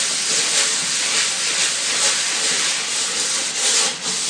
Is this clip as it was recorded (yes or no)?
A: yes